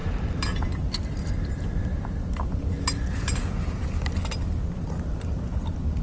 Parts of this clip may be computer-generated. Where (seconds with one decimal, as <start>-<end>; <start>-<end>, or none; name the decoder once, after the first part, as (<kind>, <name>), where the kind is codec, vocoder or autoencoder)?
none